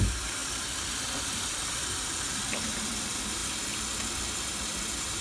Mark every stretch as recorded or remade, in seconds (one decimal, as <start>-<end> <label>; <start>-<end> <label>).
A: 0.0-3.4 remade; 3.4-4.2 recorded; 4.2-5.2 remade